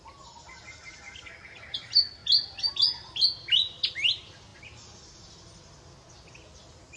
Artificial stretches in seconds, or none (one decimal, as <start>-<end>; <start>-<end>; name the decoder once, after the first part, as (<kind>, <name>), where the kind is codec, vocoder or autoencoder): none